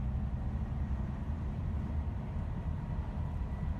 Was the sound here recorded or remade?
recorded